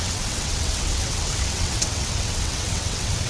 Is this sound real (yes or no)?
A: no